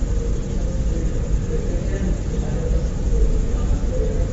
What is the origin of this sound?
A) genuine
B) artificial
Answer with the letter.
A